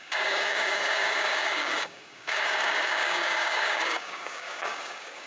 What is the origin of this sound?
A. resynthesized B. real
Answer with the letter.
A